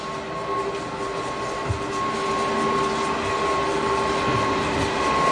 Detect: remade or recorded recorded